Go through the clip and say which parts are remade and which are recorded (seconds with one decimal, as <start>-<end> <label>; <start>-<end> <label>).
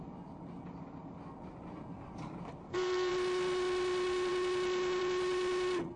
0.0-2.6 recorded; 2.6-3.1 remade; 3.1-6.0 recorded